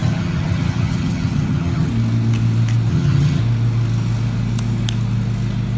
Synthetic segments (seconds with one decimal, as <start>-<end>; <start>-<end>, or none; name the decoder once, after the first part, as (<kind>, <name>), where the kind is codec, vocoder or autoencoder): 0.0-1.9 (vocoder, HiFi-GAN); 2.9-3.4